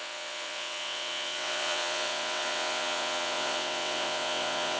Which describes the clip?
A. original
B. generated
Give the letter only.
B